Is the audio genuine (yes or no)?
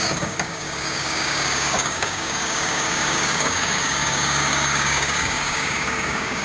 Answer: no